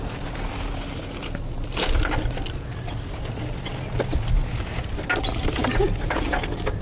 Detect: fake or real real